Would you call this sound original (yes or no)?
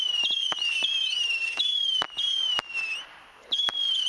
yes